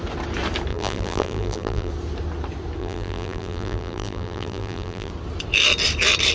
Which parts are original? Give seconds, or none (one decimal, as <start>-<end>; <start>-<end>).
0.0-0.7; 1.9-2.8; 5.1-6.3